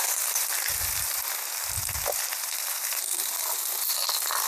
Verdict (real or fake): real